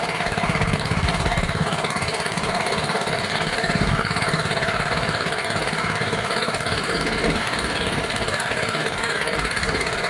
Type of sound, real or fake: fake